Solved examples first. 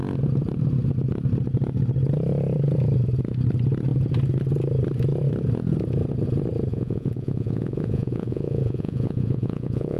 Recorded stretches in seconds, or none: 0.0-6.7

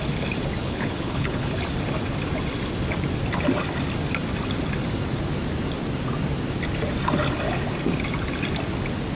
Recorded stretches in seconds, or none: 0.0-0.6; 1.5-9.2

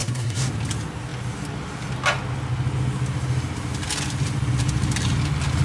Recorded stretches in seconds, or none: 0.5-5.6

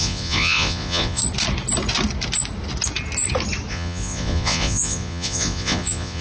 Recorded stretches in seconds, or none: 1.2-3.7

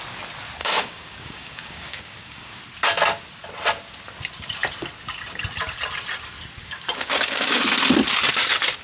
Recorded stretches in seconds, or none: 0.0-0.6; 2.6-6.6; 7.6-8.8

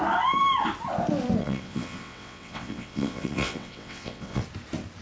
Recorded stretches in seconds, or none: 0.0-1.4; 4.4-5.0

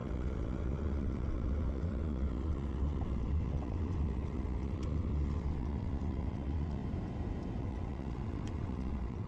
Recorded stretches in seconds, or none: 6.8-7.6

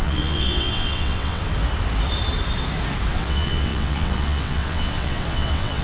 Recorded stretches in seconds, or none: 1.4-3.1